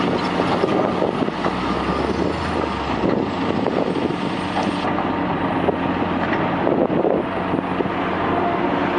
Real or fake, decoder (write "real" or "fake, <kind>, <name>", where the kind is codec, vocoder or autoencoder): real